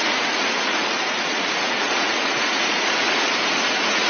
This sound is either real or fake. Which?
fake